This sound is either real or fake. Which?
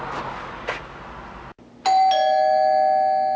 real